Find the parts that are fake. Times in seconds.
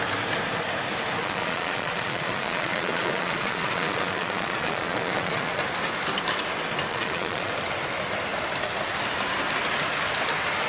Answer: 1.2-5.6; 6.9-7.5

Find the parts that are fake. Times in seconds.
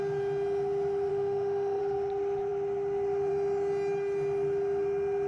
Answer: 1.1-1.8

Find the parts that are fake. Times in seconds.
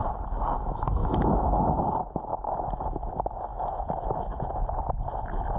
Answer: 1.0-1.7; 2.3-3.1; 3.5-4.6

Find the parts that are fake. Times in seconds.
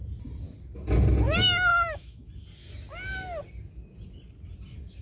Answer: 1.7-2.3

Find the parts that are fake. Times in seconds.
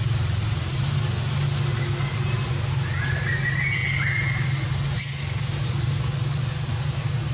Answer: none